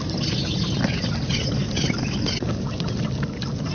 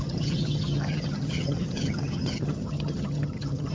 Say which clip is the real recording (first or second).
first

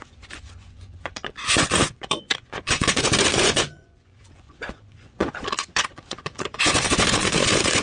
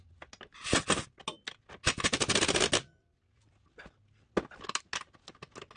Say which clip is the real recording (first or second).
second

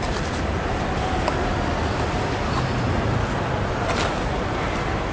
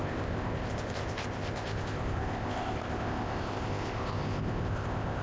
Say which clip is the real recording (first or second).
first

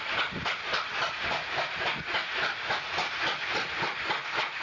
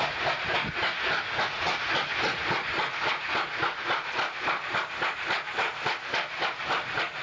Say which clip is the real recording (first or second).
second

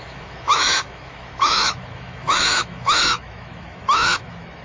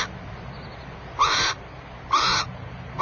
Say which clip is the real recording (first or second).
second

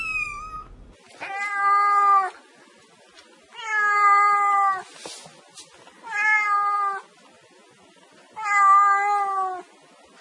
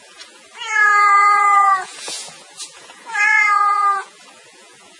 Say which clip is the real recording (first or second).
first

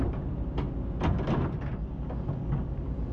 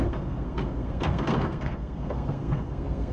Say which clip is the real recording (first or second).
first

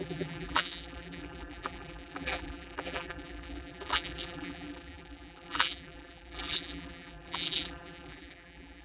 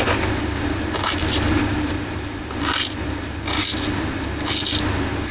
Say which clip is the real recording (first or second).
second